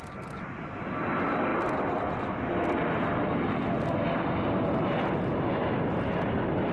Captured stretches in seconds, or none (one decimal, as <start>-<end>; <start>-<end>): 0.0-6.7